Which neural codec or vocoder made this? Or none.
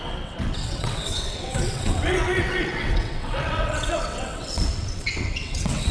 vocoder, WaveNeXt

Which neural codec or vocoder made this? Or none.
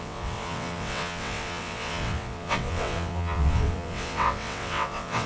vocoder, WaveNeXt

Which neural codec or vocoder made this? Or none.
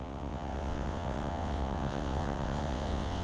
vocoder, WaveNeXt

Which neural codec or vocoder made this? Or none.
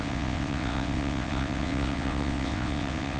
vocoder, WaveNeXt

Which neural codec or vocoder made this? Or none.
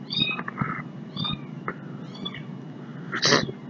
none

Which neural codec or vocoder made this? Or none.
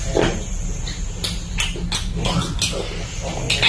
none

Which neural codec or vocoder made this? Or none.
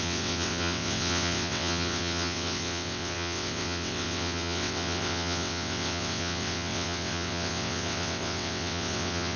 vocoder, WaveNeXt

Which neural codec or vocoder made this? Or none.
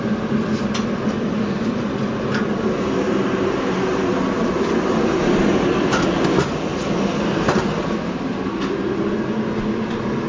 none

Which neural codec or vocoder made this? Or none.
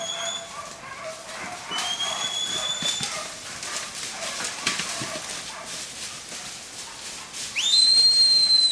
none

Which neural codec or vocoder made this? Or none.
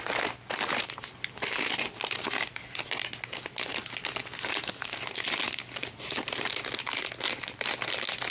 none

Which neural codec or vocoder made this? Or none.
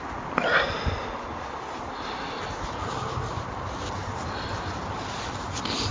none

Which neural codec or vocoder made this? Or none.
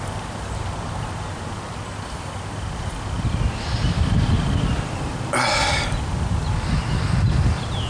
none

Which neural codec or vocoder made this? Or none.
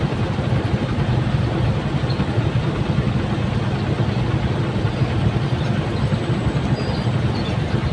none